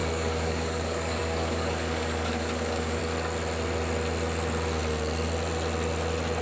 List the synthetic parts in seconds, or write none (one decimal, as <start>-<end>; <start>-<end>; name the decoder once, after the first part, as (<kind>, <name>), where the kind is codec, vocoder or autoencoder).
0.0-3.0 (codec, DAC)